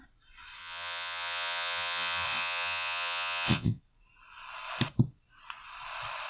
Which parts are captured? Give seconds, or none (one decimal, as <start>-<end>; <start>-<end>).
0.0-0.6; 3.8-6.3